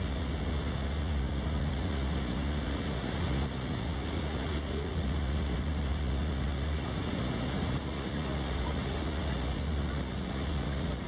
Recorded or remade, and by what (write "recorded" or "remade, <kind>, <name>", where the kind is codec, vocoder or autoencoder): remade, vocoder, Vocos